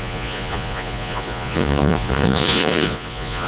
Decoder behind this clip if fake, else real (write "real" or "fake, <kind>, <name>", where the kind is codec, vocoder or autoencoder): fake, vocoder, Vocos